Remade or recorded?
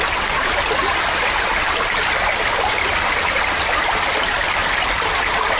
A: recorded